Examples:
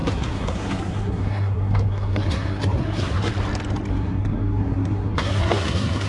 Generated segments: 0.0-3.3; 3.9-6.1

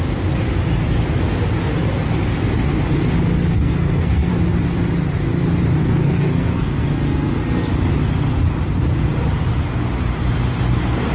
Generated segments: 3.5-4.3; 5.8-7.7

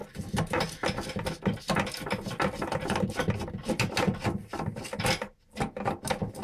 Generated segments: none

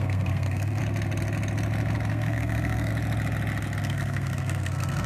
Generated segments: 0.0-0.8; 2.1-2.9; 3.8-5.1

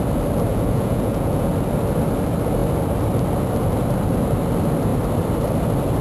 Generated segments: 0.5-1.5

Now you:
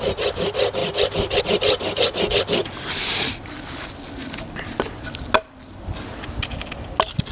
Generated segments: none

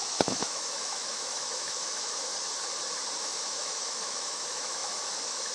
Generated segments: 0.0-2.3; 3.2-5.5

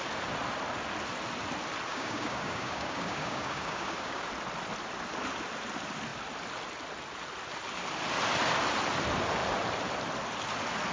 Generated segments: 1.9-4.3